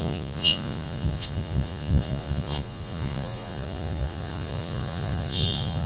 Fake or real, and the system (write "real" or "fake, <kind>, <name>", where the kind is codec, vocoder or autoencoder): fake, vocoder, Vocos